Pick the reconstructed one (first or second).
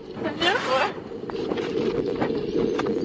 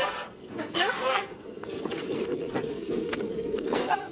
second